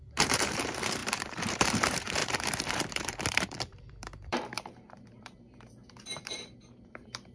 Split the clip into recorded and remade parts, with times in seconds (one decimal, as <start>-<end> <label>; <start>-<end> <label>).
0.0-7.3 remade